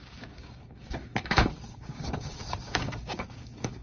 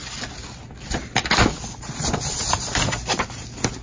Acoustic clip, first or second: second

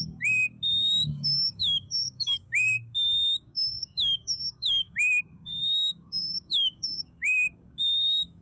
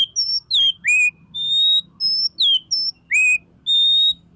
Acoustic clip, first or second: second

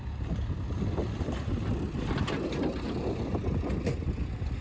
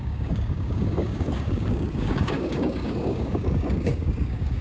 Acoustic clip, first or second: first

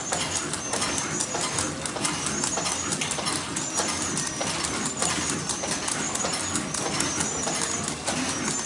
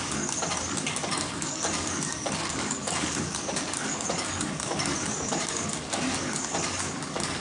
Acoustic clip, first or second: first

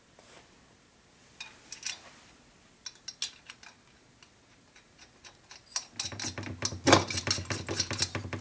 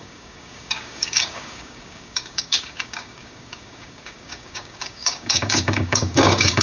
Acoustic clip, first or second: first